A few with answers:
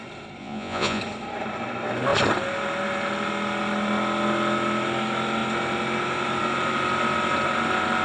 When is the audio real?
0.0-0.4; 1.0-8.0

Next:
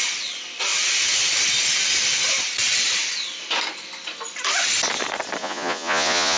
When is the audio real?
0.0-5.4

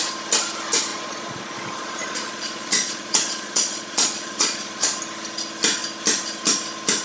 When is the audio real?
0.0-0.9; 5.0-7.0